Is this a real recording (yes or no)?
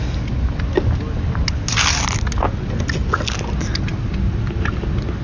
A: yes